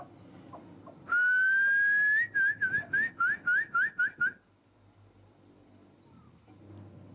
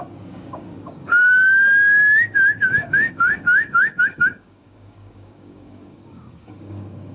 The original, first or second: first